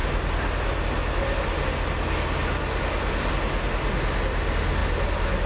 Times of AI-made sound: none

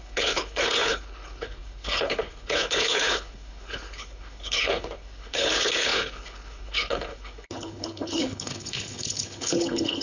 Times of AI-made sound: 0.0-10.0 (codec, HILCodec)

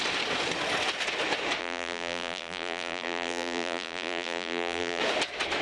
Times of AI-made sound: 1.6-5.0 (vocoder, BigVGAN v2)